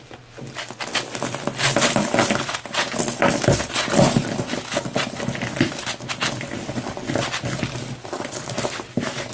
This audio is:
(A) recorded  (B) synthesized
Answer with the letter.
A